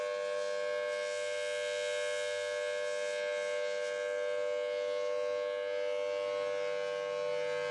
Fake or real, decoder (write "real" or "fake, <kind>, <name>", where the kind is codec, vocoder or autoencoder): real